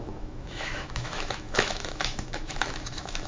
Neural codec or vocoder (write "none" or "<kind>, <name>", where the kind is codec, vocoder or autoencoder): autoencoder, DAC-VAE